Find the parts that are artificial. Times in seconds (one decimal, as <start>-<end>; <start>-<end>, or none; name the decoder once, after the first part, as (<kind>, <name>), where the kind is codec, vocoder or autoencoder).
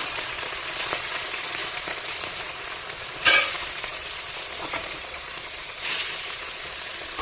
0.0-7.2 (vocoder, Vocos)